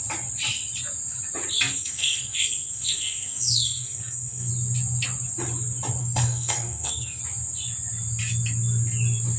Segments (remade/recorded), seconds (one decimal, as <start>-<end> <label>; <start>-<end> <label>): 0.0-1.7 recorded; 1.7-4.5 remade; 4.5-6.0 recorded; 6.0-7.2 remade; 7.2-9.4 recorded